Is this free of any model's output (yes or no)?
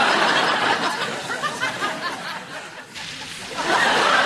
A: yes